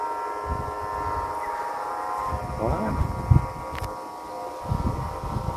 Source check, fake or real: real